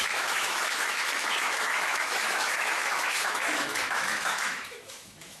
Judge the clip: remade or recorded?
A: remade